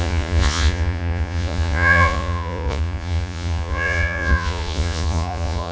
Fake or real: fake